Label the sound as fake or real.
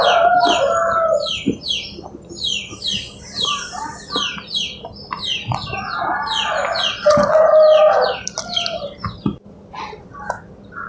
real